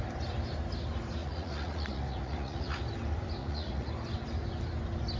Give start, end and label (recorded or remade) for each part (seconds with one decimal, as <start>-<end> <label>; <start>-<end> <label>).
0.0-1.2 recorded; 1.2-2.8 remade; 2.8-3.4 recorded; 3.4-3.9 remade; 3.9-5.2 recorded